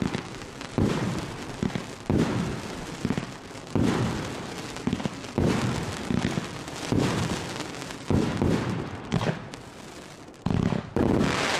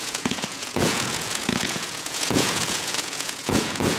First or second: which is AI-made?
second